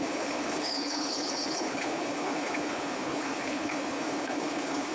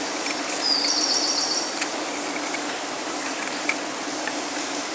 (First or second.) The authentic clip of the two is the second